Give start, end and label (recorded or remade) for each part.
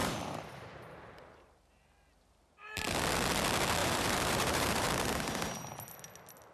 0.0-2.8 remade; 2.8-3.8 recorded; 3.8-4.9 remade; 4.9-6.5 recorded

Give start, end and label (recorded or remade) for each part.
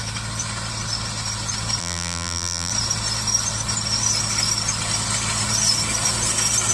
0.0-1.8 recorded; 1.8-2.7 remade; 2.7-6.7 recorded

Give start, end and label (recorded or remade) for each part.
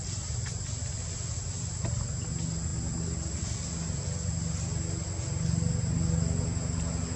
0.0-1.8 remade; 1.8-7.2 recorded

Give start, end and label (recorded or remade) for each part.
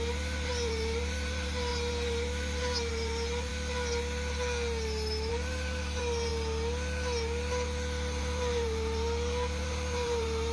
0.0-3.5 remade; 3.5-5.3 recorded; 5.3-6.3 remade; 6.3-8.2 recorded; 8.2-10.5 remade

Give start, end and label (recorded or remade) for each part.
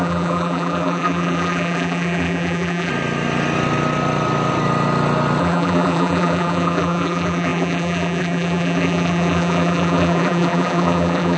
0.0-2.9 remade; 2.9-5.4 recorded; 5.4-11.4 remade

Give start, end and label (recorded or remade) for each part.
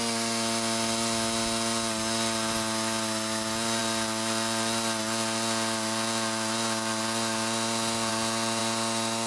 0.0-9.3 recorded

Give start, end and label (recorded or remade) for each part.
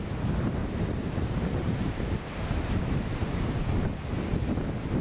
0.0-0.6 recorded; 0.6-3.6 remade; 3.6-5.0 recorded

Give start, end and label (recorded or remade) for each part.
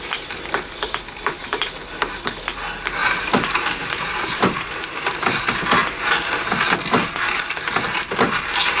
0.0-3.0 recorded; 3.0-4.9 remade; 4.9-8.8 recorded